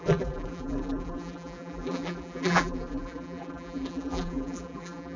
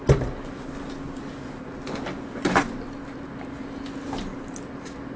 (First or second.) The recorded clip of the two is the second